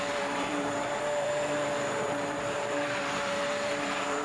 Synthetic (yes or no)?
yes